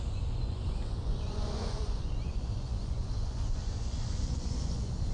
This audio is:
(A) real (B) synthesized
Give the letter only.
B